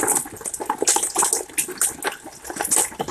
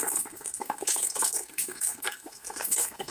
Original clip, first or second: first